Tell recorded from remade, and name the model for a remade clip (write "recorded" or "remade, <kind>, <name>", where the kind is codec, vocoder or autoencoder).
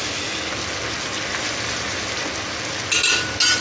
recorded